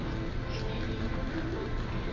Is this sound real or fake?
real